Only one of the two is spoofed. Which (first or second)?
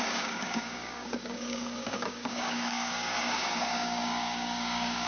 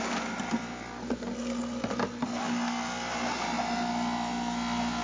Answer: first